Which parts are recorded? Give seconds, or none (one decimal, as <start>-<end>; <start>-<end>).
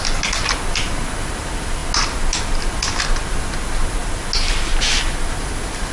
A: 0.0-5.9